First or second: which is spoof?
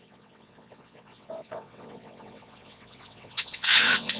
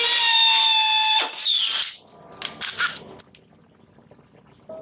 first